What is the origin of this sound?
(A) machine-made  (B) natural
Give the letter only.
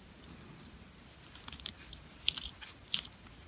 B